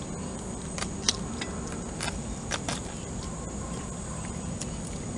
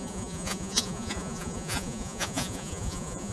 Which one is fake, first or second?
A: second